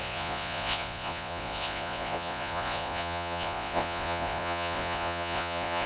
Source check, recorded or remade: remade